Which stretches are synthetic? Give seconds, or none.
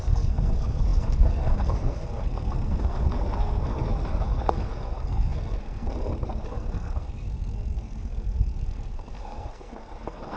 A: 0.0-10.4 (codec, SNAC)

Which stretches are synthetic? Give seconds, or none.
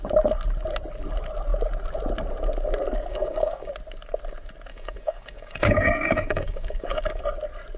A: 3.1-3.7 (codec, DAC); 4.7-7.2